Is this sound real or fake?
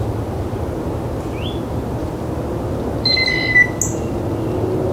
real